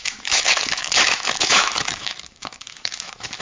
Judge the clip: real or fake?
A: fake